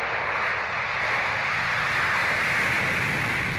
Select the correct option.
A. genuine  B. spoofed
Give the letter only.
A